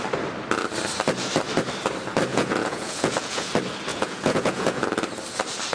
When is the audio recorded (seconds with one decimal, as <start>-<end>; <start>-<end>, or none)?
0.0-2.3; 3.5-3.9; 4.8-5.7